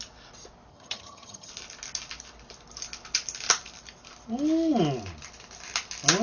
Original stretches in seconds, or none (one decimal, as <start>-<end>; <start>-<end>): 0.0-0.7; 1.5-6.2